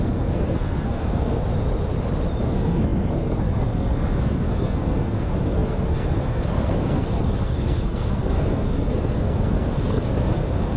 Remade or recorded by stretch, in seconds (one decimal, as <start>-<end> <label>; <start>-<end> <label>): 0.0-1.4 remade; 1.4-2.4 recorded; 2.4-10.8 remade